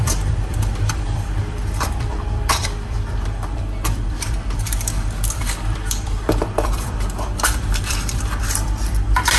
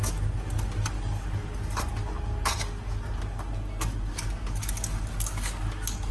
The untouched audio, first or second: second